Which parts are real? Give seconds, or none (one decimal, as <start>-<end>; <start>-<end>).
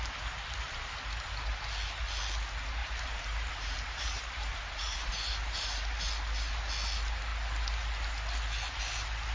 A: 0.0-2.8; 6.1-9.3